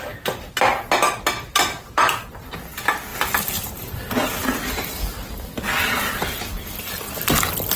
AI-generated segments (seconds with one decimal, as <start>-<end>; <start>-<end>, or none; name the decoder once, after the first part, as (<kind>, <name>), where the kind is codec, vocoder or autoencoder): none

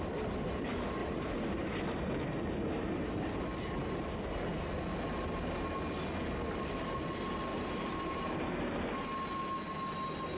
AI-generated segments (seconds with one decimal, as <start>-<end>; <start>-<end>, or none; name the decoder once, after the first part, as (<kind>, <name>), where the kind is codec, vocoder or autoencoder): 1.0-1.8 (vocoder, BigVGAN v2); 7.5-8.9

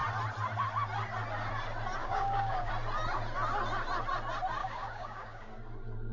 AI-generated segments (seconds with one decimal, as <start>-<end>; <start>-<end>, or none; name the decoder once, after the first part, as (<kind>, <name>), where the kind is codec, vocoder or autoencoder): 2.0-2.7 (codec, DAC); 4.6-5.5

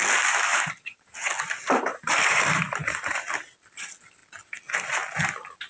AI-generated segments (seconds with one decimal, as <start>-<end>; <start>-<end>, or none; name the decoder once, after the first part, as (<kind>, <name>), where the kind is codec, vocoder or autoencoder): 0.5-1.3 (vocoder, BigVGAN v2); 1.9-3.3

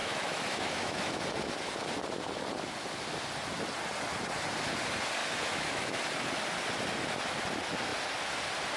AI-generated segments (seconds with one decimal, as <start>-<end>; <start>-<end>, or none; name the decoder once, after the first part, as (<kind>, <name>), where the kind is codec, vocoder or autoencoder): 0.0-1.2 (autoencoder, DAC-VAE); 5.2-6.0

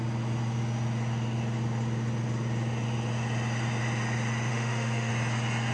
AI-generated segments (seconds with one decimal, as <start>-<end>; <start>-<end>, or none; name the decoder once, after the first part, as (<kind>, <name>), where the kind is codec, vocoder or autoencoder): 4.5-5.1 (autoencoder, DAC-VAE)

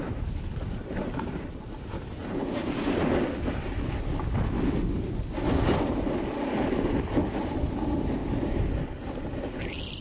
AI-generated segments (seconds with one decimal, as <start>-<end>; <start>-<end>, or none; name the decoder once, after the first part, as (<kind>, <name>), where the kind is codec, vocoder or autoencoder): 0.0-2.2 (vocoder, BigVGAN v2); 7.3-8.2

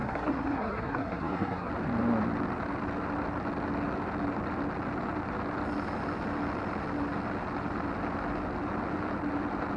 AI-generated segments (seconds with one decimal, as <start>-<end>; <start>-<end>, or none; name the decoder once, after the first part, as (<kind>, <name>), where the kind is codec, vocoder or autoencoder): 0.0-1.7 (codec, SNAC)